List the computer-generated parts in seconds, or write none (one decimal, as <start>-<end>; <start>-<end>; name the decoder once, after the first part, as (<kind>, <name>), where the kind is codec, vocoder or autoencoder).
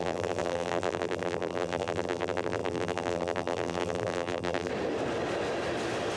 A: 0.0-4.7 (vocoder, BigVGAN v2)